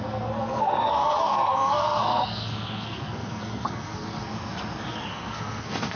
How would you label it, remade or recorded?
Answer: remade